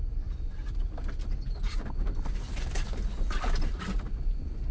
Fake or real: real